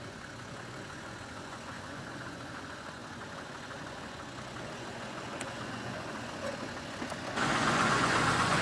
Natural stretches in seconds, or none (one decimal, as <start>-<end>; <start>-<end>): none

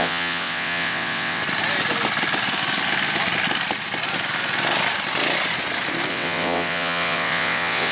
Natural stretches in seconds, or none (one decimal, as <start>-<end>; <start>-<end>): 1.4-6.1

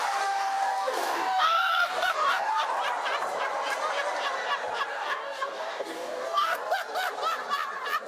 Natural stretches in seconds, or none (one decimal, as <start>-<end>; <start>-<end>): 2.6-4.9; 6.6-8.1

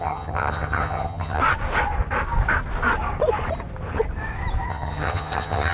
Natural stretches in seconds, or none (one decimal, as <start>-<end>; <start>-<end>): 1.4-4.7

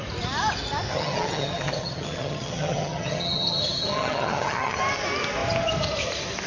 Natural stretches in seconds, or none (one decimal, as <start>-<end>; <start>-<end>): 0.0-0.9; 4.8-6.5

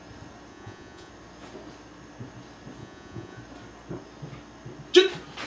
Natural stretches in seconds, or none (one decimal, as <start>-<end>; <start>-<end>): 0.0-0.5; 1.1-2.8; 3.4-5.5

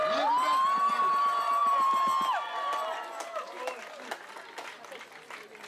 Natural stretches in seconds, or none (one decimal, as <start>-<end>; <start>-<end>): 0.0-5.7